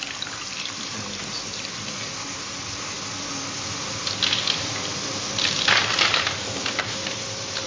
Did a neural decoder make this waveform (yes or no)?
no